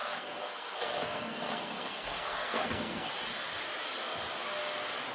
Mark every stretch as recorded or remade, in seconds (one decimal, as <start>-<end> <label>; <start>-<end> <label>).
0.0-3.1 remade; 3.1-5.1 recorded